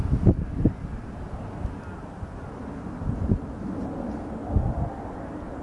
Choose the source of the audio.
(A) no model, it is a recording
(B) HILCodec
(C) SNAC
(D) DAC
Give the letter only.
A